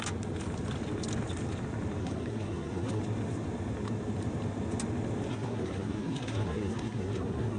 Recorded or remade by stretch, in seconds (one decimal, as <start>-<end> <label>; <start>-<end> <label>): 0.0-2.0 recorded; 2.0-3.0 remade; 3.0-5.3 recorded; 5.3-7.6 remade